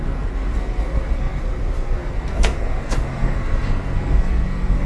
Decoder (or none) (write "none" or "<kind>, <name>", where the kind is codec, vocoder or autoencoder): codec, SNAC